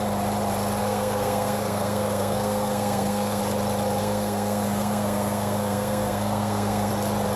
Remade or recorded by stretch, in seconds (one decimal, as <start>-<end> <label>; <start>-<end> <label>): 0.0-0.8 recorded; 0.8-3.4 remade; 3.4-4.0 recorded; 4.0-6.9 remade; 6.9-7.4 recorded